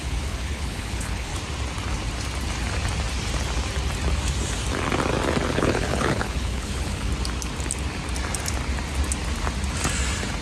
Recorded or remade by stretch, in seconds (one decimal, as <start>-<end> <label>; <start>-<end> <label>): 0.0-1.3 remade; 1.3-5.5 recorded; 5.5-7.1 remade; 7.1-10.4 recorded